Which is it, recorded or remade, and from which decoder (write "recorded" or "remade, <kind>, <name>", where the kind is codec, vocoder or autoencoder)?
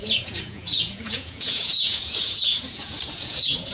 remade, vocoder, Vocos